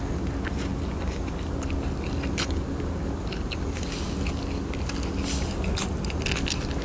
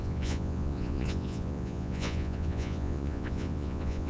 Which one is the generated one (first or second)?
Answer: second